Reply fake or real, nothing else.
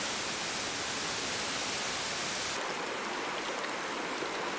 real